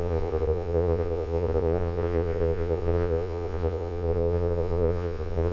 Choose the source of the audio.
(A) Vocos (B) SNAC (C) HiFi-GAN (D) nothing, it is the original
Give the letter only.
A